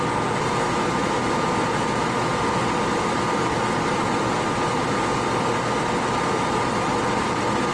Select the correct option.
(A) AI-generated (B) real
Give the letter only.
B